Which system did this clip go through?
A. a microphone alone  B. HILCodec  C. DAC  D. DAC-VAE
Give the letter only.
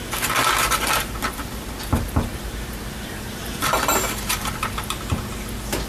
A